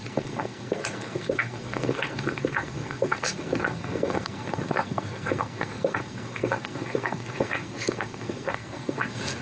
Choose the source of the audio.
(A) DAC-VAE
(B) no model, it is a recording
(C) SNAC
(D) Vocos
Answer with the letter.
C